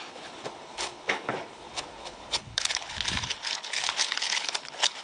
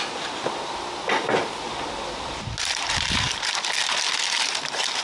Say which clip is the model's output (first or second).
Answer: first